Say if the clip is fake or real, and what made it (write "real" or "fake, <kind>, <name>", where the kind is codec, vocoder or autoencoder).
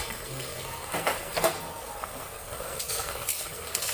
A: fake, codec, SNAC